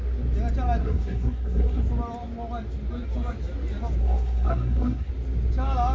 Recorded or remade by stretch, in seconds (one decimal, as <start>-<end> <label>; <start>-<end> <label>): 0.0-0.8 recorded; 0.8-1.8 remade; 1.8-4.0 recorded; 4.0-5.1 remade; 5.1-5.9 recorded